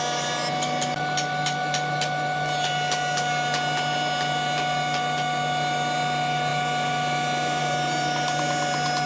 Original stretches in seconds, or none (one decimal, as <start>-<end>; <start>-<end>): 0.0-9.1